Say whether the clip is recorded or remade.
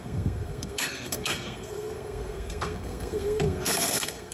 remade